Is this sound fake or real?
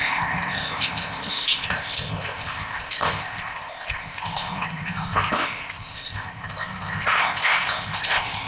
fake